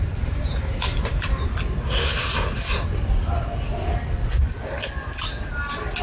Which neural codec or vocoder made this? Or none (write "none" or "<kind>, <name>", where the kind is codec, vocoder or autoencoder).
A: none